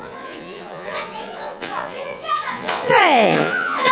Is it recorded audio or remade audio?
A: remade